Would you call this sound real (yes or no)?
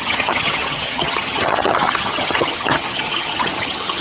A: no